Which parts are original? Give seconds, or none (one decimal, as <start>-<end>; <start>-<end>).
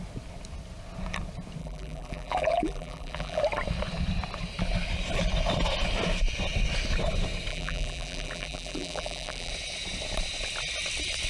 0.0-1.6; 3.4-7.5; 9.5-11.3